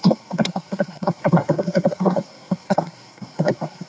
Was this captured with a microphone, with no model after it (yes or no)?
no